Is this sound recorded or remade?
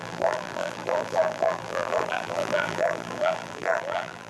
remade